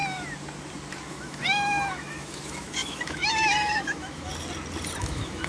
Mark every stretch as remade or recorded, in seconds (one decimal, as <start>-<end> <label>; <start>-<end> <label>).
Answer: 0.0-1.1 recorded; 1.1-4.3 remade; 4.3-5.0 recorded; 5.0-5.5 remade